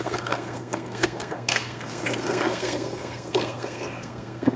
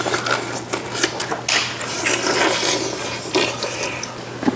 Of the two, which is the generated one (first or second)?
first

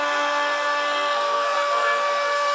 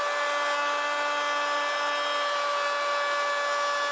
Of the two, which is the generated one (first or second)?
first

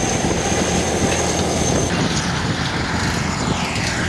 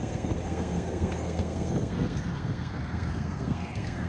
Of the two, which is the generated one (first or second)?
second